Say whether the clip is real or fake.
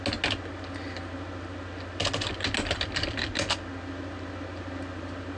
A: real